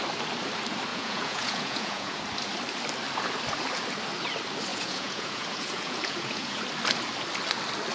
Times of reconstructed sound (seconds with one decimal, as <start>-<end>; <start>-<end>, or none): 0.9-2.2; 4.7-6.6